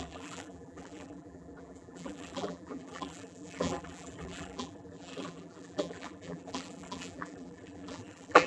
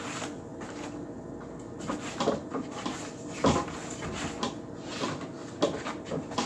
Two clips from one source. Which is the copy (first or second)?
first